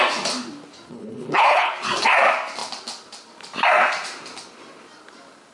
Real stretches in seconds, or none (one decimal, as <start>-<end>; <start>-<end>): 0.0-0.9; 1.7-5.5